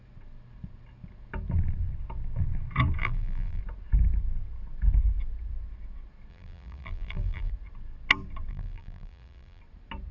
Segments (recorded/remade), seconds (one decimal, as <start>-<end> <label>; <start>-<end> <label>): 0.0-3.0 recorded; 3.0-3.6 remade; 3.6-6.3 recorded; 6.3-7.5 remade; 7.5-8.5 recorded; 8.5-9.6 remade; 9.6-10.1 recorded